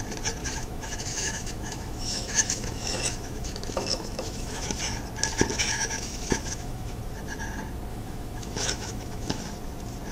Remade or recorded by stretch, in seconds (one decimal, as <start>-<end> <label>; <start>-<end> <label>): 0.0-0.4 recorded; 0.4-4.8 remade; 4.8-5.5 recorded; 5.5-7.0 remade; 7.0-7.9 recorded; 7.9-9.4 remade; 9.4-10.1 recorded